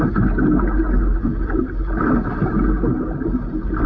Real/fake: real